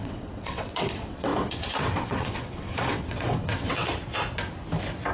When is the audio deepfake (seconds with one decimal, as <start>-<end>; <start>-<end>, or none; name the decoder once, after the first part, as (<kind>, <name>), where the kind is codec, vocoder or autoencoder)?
0.0-3.9 (vocoder, WaveNeXt)